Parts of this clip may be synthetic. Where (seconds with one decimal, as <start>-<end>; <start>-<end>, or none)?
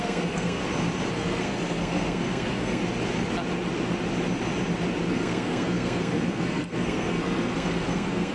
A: 0.0-0.6; 1.1-2.8; 5.1-8.3